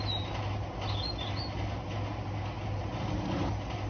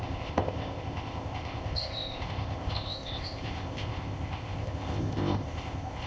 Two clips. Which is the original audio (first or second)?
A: first